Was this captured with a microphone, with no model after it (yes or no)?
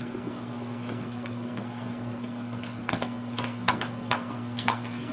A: no